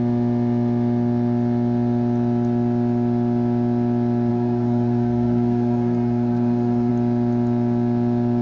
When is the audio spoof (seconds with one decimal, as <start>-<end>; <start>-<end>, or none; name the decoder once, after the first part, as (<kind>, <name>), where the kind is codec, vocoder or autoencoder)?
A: 4.3-6.9 (codec, SNAC)